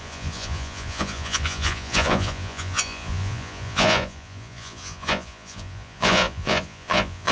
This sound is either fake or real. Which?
fake